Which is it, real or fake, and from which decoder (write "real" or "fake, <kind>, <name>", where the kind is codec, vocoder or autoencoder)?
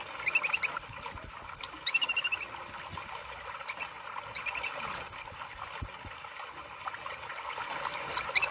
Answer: real